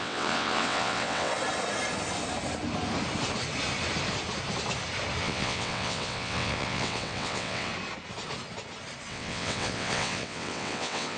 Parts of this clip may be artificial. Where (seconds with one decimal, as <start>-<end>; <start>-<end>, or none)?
0.0-1.3; 5.2-7.7; 9.1-11.2